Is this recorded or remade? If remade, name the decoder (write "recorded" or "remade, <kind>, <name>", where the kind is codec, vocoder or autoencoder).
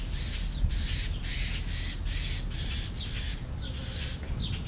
recorded